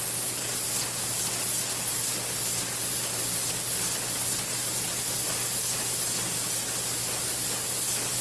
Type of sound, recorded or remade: recorded